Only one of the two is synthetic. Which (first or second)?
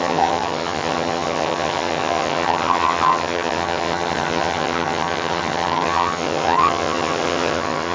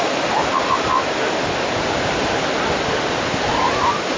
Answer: first